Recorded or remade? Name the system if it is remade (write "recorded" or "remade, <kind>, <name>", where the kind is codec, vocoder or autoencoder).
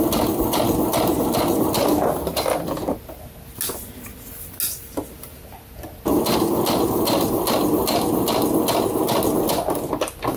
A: recorded